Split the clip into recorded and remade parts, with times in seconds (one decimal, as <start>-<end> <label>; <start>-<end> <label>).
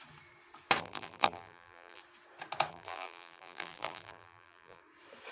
0.0-0.8 recorded; 0.8-2.0 remade; 2.0-2.7 recorded; 2.7-4.8 remade; 4.8-5.3 recorded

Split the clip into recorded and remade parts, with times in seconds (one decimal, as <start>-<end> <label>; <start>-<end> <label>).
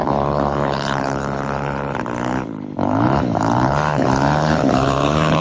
0.0-5.4 remade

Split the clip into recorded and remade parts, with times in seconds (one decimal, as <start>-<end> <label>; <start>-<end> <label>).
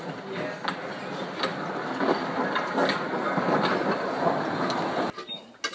0.0-2.8 remade; 2.8-5.7 recorded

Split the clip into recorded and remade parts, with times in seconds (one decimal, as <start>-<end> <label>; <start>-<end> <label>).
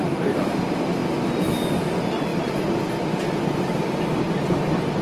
0.0-1.0 remade; 1.0-1.6 recorded; 1.6-5.0 remade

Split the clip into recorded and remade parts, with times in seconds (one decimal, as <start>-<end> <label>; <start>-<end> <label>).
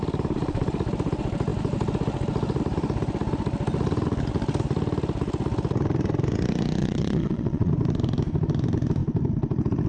0.0-6.8 recorded; 6.8-7.7 remade; 7.7-9.9 recorded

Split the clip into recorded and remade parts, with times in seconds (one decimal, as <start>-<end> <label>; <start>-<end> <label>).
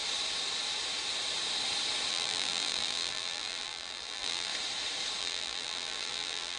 0.0-2.1 recorded; 2.1-4.5 remade; 4.5-5.2 recorded; 5.2-6.6 remade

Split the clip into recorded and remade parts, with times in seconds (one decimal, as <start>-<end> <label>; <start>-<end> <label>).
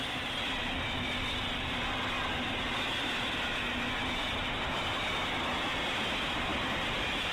0.0-6.5 recorded; 6.5-7.3 remade